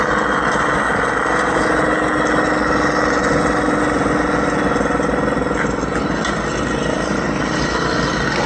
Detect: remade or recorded recorded